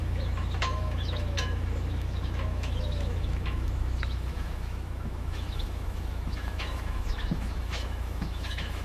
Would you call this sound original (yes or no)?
no